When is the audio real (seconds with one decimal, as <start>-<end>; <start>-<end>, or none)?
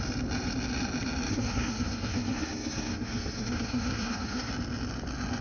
0.0-1.3; 4.5-5.4